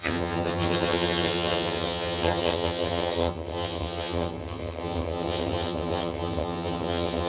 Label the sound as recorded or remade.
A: remade